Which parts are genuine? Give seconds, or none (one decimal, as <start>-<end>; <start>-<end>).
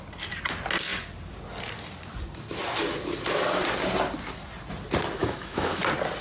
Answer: 0.0-5.2; 5.8-6.2